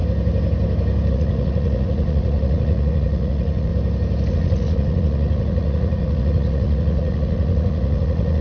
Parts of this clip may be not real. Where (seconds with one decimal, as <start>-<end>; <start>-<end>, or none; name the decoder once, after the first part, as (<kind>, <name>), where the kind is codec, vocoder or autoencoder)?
1.1-3.7 (vocoder, Vocos); 4.3-8.4